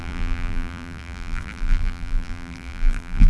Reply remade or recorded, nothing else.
remade